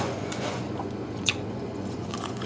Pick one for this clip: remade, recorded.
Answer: remade